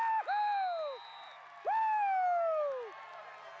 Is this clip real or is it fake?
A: real